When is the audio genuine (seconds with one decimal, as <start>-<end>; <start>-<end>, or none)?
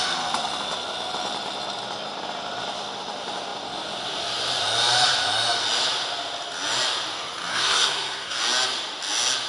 0.0-7.5; 8.4-9.5